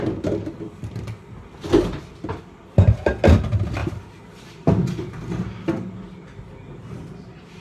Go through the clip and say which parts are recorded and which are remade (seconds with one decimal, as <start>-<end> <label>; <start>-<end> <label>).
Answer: 0.0-7.6 recorded